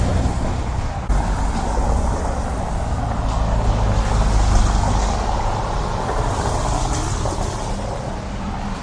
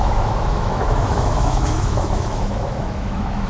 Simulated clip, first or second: second